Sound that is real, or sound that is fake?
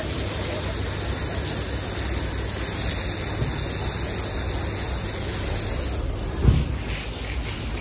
real